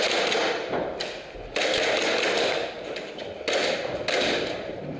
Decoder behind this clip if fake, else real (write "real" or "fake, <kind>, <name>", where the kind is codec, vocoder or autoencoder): real